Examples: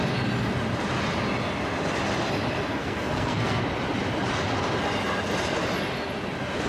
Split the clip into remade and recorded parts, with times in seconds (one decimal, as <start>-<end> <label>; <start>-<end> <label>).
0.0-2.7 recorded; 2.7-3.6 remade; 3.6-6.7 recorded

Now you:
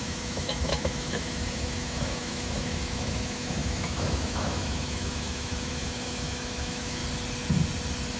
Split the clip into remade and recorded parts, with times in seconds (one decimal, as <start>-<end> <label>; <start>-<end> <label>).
0.0-7.0 remade; 7.0-8.2 recorded

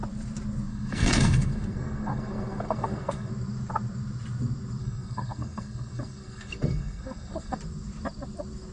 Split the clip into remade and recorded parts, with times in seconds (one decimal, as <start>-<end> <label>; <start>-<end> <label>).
0.0-0.7 recorded; 0.7-3.3 remade; 3.3-4.8 recorded; 4.8-7.6 remade; 7.6-8.7 recorded